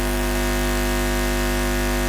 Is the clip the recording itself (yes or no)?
yes